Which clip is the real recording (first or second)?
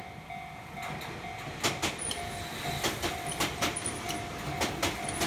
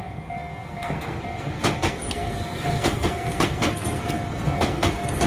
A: first